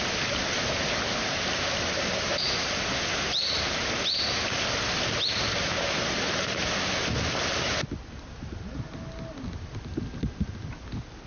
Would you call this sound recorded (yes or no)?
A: yes